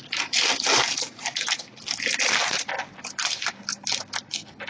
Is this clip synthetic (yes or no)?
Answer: no